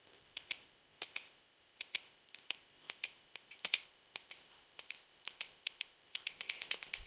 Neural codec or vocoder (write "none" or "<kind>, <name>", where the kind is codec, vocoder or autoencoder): codec, ZipCodec